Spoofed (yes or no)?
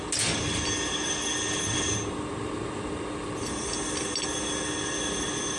no